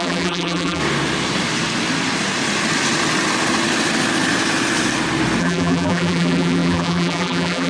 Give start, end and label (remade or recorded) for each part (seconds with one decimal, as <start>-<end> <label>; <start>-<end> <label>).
0.0-0.8 remade; 0.8-5.4 recorded; 5.4-7.7 remade